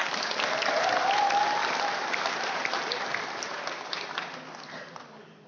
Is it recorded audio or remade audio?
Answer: recorded